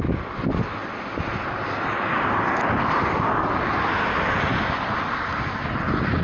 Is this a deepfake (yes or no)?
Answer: no